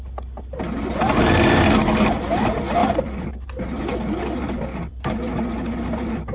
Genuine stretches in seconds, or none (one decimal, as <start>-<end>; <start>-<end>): 0.0-2.8; 3.5-6.3